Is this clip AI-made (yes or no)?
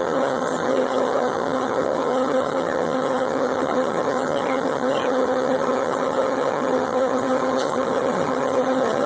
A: yes